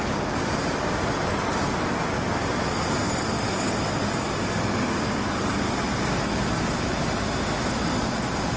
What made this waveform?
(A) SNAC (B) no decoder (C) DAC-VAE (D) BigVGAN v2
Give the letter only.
B